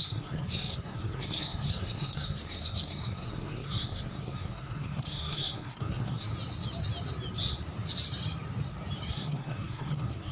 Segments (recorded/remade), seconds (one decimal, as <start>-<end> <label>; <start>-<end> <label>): 0.0-6.3 remade; 6.3-9.1 recorded; 9.1-10.3 remade